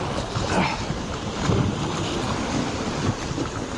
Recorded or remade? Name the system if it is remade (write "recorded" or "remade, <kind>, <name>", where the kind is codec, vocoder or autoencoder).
recorded